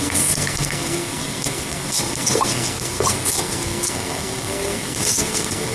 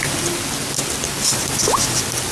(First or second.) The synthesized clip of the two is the first